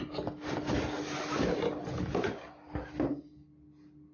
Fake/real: real